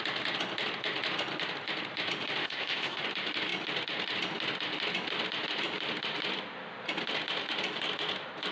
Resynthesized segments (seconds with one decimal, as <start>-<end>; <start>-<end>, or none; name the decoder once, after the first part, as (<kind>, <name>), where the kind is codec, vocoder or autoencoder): 2.4-3.0 (codec, ZipCodec)